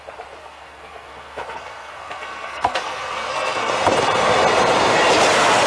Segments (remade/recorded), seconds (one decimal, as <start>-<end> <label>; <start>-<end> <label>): 0.0-0.4 recorded; 0.4-3.7 remade; 3.7-5.7 recorded